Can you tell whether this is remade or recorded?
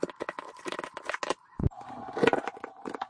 recorded